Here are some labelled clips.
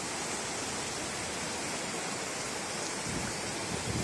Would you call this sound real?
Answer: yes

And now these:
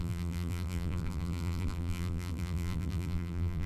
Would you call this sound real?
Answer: no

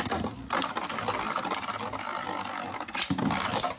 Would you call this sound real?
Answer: yes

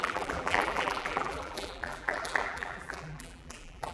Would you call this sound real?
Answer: no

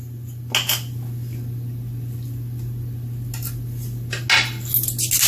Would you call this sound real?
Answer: yes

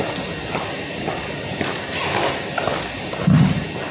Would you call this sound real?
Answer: yes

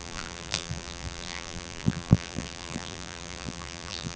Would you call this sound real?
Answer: no